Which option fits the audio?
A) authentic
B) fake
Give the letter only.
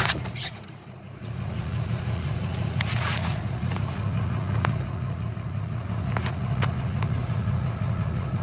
B